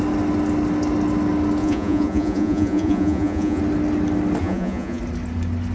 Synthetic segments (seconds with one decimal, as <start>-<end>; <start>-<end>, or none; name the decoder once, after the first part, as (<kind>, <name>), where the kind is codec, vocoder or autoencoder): 1.6-3.6 (vocoder, Vocos); 4.4-5.0